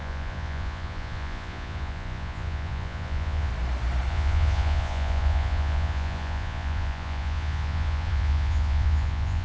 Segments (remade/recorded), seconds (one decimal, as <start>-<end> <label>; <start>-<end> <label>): 0.0-3.5 remade; 3.5-4.1 recorded; 4.1-9.4 remade